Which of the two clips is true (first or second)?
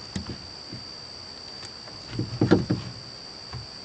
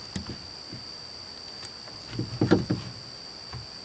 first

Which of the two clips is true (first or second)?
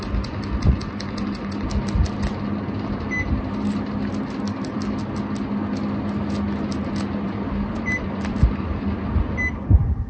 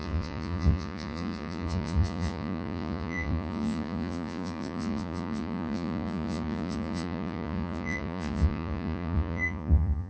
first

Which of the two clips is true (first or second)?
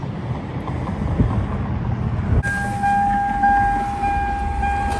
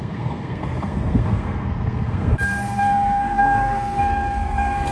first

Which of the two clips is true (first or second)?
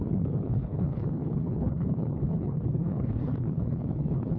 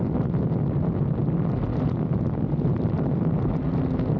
second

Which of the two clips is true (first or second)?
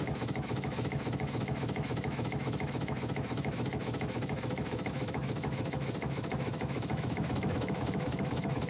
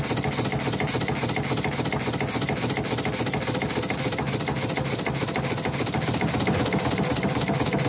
second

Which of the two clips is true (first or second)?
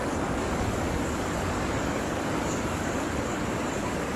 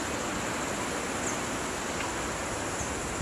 second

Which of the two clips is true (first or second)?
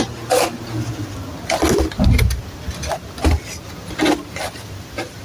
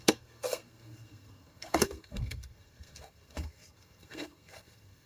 first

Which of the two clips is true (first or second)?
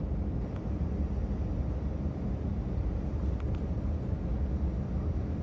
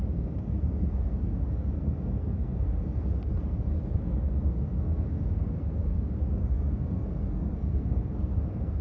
first